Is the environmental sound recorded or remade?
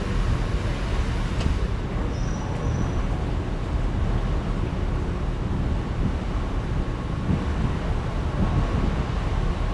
recorded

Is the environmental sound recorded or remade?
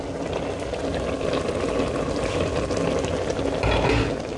recorded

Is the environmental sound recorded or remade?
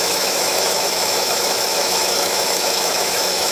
remade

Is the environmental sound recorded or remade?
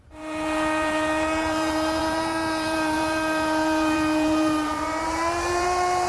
remade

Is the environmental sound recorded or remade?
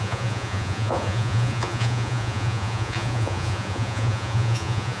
remade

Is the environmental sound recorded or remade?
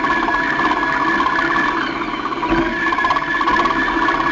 recorded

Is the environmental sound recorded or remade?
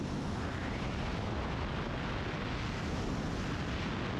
recorded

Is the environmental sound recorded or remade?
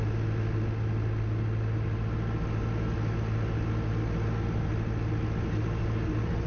recorded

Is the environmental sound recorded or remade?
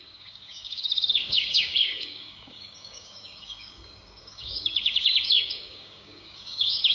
remade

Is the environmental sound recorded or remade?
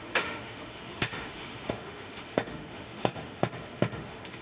remade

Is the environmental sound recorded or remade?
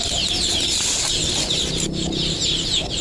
recorded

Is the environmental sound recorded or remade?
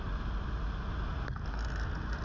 recorded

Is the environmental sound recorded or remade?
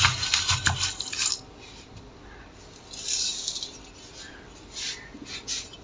recorded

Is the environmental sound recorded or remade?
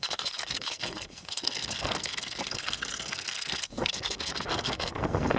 remade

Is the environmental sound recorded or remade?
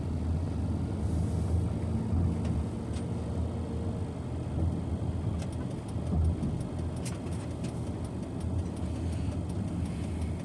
recorded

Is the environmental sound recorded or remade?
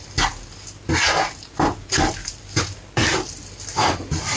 recorded